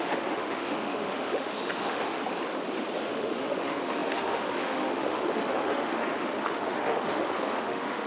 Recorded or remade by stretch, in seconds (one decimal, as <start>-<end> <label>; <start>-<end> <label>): 0.0-2.2 remade; 2.2-3.0 recorded; 3.0-8.1 remade